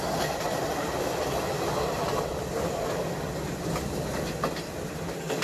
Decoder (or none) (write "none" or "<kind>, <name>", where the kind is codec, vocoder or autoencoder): none